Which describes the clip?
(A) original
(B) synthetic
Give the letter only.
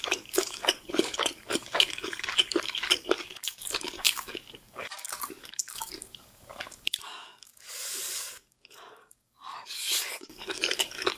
B